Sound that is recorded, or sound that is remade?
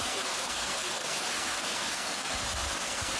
remade